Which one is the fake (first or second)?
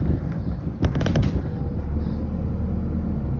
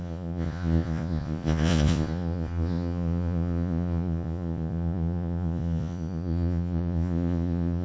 second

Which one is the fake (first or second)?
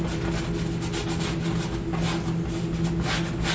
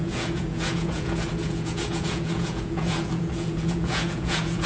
second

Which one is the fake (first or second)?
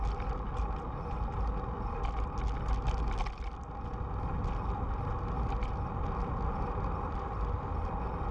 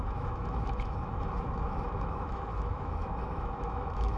second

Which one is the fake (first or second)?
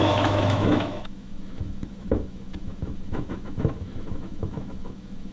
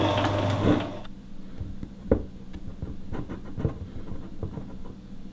first